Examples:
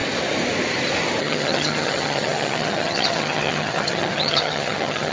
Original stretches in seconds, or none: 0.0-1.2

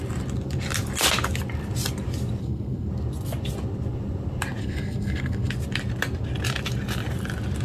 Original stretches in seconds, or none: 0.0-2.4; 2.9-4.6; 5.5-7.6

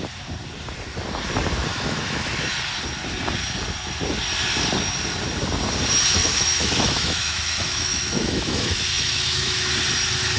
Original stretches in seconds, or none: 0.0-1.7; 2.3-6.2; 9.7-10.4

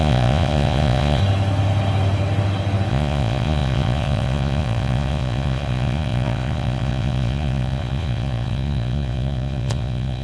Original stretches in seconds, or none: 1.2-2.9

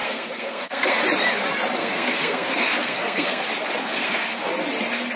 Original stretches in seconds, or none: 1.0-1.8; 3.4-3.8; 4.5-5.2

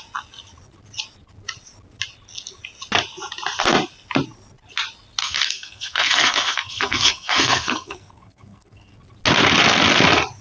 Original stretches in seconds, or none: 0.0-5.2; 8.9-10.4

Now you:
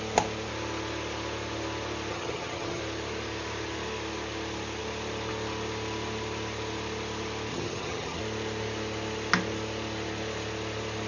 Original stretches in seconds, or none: 0.0-2.1; 2.8-7.5; 8.2-11.1